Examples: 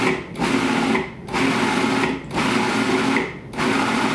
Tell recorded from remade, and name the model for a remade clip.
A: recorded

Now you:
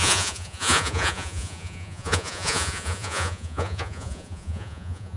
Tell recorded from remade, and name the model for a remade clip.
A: remade, vocoder, Vocos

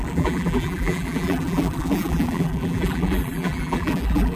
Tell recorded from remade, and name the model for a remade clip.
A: remade, vocoder, BigVGAN v2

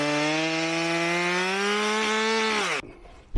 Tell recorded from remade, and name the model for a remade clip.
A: recorded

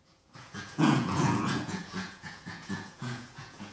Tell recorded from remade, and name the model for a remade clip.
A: remade, vocoder, Vocos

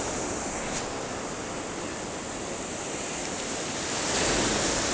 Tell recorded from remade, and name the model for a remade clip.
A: recorded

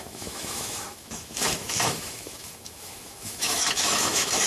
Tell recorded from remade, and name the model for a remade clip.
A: remade, autoencoder, DAC-VAE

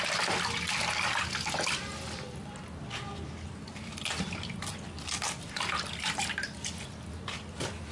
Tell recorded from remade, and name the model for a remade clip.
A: recorded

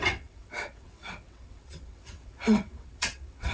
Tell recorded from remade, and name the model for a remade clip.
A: remade, vocoder, WaveNeXt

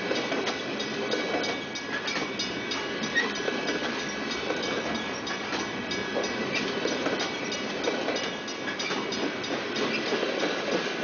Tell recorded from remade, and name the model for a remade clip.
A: recorded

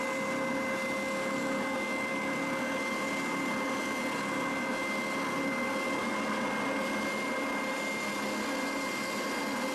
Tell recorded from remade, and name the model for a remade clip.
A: recorded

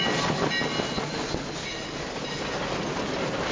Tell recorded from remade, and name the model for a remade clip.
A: recorded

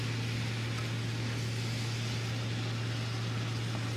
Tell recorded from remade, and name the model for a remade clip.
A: recorded